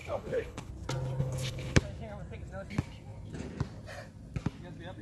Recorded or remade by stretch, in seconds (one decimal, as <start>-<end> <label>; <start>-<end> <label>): 0.0-0.7 remade; 0.7-1.2 recorded; 1.2-1.8 remade; 1.8-5.0 recorded